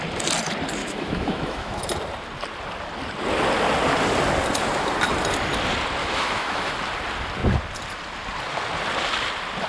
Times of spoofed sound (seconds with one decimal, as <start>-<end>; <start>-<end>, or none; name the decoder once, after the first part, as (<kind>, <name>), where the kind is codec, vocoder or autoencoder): 0.8-1.8 (autoencoder, DAC-VAE); 6.0-6.7